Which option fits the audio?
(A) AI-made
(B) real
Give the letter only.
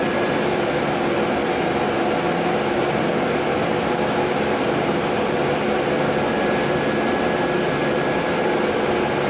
B